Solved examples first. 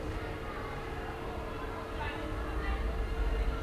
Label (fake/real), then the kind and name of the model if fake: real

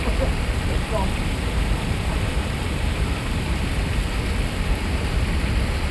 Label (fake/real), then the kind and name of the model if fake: fake, vocoder, BigVGAN v2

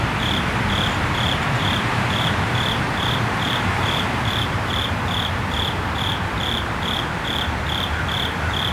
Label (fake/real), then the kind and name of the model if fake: fake, vocoder, BigVGAN v2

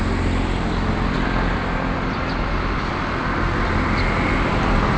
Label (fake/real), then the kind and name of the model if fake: real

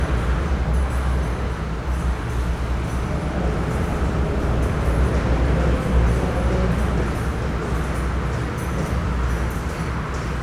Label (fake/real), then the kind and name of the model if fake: real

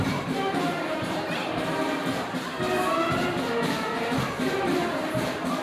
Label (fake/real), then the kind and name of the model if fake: fake, vocoder, BigVGAN v2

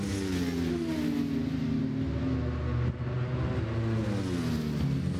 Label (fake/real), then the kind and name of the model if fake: real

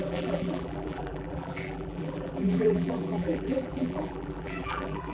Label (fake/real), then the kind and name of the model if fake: fake, vocoder, BigVGAN v2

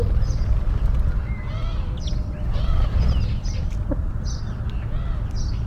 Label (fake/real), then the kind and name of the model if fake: real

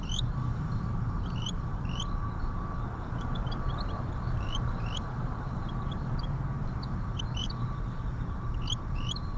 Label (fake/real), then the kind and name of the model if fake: fake, vocoder, BigVGAN v2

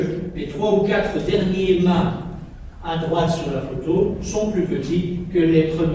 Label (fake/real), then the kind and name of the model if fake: fake, vocoder, BigVGAN v2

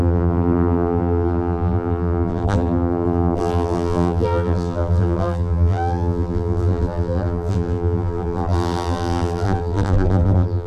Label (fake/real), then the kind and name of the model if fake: fake, vocoder, BigVGAN v2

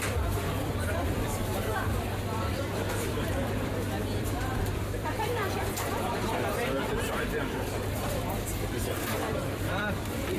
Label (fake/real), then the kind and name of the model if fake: fake, vocoder, BigVGAN v2